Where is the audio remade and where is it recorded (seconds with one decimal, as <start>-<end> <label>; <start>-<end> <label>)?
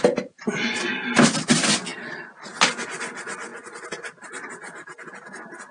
0.0-5.7 recorded